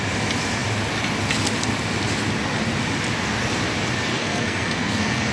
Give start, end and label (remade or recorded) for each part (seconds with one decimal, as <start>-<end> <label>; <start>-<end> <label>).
0.0-4.1 recorded; 4.1-5.3 remade